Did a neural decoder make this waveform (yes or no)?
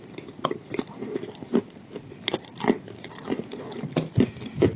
no